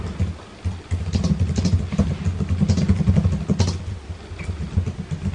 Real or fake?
real